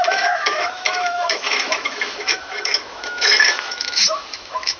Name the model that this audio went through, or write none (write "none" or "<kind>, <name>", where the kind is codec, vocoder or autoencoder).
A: autoencoder, DAC-VAE